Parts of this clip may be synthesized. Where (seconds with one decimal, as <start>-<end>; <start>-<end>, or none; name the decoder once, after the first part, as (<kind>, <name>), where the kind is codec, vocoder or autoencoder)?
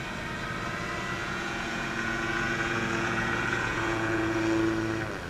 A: 1.2-4.4 (vocoder, Vocos)